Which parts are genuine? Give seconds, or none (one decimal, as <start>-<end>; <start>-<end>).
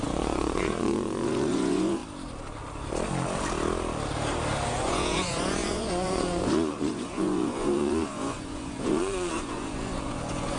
2.0-4.7